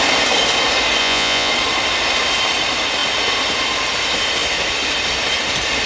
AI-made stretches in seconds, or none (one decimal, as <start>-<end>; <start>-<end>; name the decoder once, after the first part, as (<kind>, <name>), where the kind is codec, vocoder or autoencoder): 1.0-1.5 (vocoder, Vocos)